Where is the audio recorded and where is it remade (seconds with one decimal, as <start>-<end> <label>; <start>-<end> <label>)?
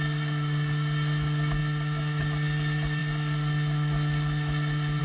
0.0-5.0 recorded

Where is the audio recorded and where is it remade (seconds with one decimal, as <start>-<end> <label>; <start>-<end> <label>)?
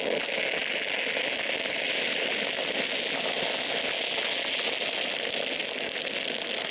0.0-6.7 recorded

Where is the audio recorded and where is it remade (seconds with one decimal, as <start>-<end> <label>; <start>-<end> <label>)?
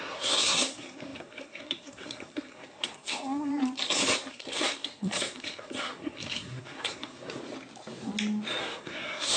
0.0-3.5 remade; 3.5-4.3 recorded; 4.3-7.4 remade; 7.4-8.6 recorded; 8.6-9.4 remade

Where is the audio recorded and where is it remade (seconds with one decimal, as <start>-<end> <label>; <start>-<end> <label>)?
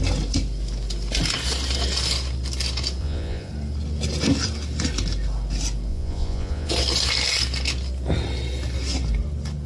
0.0-3.0 recorded; 3.0-3.5 remade; 3.5-5.9 recorded; 5.9-6.7 remade; 6.7-9.7 recorded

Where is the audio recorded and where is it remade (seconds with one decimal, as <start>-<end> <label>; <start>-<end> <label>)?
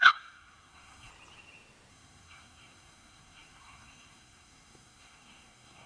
0.0-1.1 remade; 1.1-1.9 recorded; 1.9-5.9 remade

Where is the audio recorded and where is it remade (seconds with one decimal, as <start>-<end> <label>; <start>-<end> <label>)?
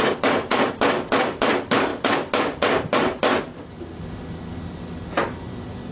0.0-5.9 recorded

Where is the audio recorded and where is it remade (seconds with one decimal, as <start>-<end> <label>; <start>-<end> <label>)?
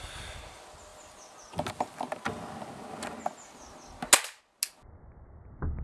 0.0-5.8 recorded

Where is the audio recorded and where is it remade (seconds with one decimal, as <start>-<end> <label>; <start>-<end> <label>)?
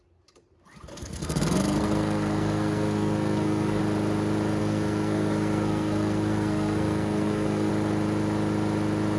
0.0-0.9 recorded; 0.9-3.8 remade; 3.8-4.6 recorded; 4.6-7.7 remade; 7.7-9.2 recorded